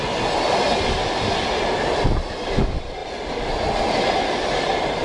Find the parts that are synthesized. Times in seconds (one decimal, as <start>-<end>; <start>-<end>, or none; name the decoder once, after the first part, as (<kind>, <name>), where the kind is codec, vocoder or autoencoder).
none